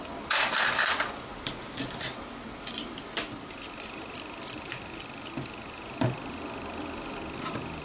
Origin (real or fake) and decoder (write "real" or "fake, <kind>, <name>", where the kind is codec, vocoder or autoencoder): fake, vocoder, BigVGAN v2